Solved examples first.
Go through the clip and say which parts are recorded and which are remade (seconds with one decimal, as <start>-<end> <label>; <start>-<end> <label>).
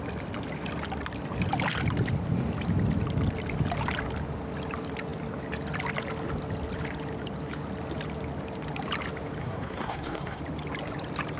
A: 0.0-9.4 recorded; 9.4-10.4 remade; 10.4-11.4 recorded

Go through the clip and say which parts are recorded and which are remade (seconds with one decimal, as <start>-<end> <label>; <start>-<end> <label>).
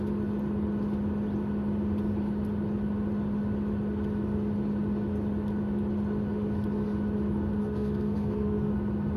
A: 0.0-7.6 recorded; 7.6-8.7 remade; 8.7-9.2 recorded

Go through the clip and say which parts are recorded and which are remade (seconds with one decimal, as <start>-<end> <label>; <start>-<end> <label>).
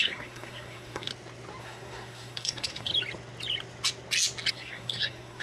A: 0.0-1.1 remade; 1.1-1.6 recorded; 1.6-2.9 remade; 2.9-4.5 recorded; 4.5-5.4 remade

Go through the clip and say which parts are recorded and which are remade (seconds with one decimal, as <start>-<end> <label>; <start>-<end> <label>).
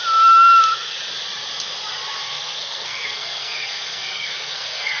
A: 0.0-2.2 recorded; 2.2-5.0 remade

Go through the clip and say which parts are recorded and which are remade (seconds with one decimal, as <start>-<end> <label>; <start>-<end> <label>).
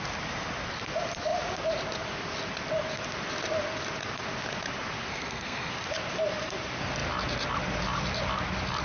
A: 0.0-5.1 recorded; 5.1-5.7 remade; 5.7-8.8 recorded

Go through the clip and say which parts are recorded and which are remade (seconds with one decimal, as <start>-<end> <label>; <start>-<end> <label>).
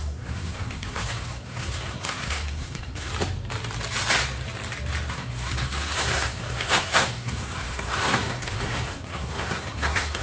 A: 0.0-3.1 remade; 3.1-5.1 recorded; 5.1-10.2 remade